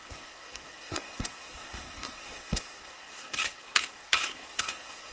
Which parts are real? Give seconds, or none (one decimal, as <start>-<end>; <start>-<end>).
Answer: none